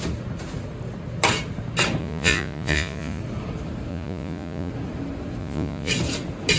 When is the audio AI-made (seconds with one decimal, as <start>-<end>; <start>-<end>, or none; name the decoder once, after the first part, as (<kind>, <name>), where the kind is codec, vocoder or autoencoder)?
2.0-3.2 (vocoder, Vocos); 3.9-4.7; 5.4-5.9